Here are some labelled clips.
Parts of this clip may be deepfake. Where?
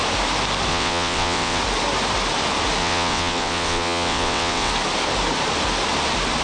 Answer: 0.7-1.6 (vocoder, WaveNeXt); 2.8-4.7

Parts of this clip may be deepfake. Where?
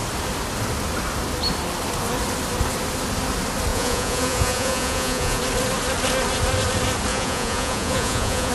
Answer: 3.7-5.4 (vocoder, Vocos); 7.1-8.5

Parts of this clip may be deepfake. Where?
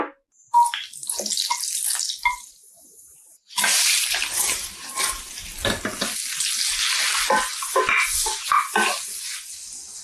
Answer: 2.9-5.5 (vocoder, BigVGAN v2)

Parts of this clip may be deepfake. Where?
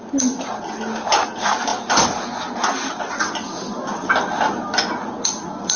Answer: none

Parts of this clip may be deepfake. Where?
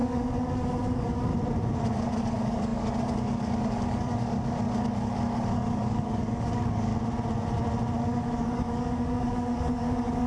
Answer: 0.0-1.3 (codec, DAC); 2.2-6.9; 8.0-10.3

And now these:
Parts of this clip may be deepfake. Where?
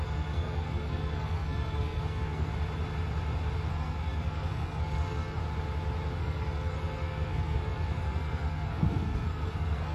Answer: 0.0-2.5 (codec, SNAC); 3.7-5.4; 6.2-9.9